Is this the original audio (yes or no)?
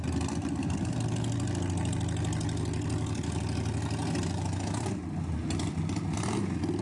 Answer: yes